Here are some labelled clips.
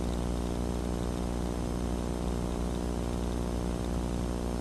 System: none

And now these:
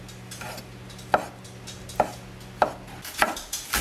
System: none